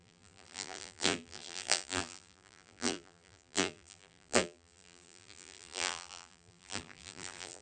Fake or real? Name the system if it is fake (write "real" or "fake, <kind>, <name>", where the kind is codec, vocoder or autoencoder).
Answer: fake, vocoder, BigVGAN v2